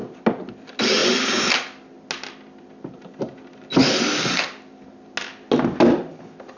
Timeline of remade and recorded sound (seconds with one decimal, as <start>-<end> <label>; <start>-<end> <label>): 0.0-6.6 recorded

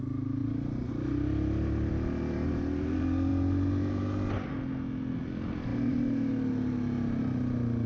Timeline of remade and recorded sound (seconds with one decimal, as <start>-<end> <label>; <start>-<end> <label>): 0.0-7.9 recorded

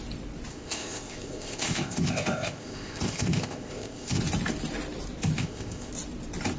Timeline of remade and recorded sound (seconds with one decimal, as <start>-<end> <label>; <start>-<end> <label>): 0.0-0.5 recorded; 0.5-4.2 remade; 4.2-5.4 recorded; 5.4-5.9 remade; 5.9-6.6 recorded

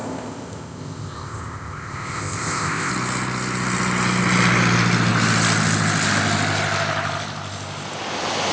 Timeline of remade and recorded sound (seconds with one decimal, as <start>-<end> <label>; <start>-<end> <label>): 0.0-2.9 remade; 2.9-8.5 recorded